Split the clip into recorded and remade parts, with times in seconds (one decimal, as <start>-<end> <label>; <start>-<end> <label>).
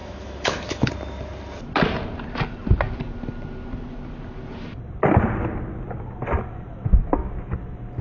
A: 0.0-0.9 remade; 0.9-8.0 recorded